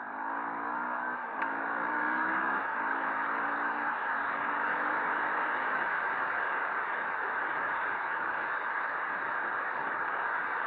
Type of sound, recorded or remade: remade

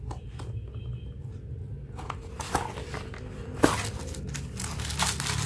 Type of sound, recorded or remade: recorded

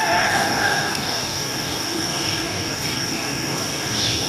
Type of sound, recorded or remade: remade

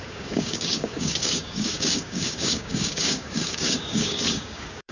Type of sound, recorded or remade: remade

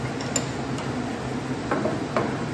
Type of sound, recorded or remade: recorded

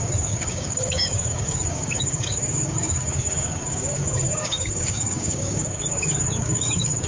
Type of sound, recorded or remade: remade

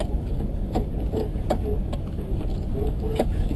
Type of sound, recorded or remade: remade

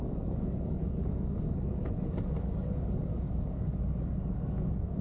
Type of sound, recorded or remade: remade